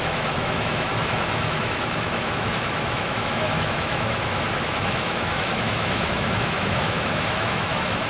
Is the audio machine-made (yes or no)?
yes